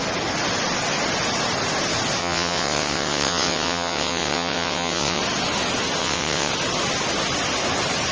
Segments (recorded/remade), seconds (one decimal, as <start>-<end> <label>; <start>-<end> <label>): 0.0-2.2 recorded; 2.2-5.2 remade; 5.2-6.0 recorded; 6.0-6.5 remade; 6.5-8.1 recorded